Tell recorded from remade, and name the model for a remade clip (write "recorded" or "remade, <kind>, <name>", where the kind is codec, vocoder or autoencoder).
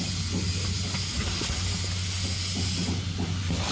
recorded